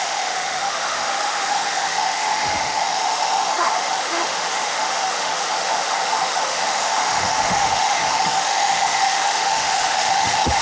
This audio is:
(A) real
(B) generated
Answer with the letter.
B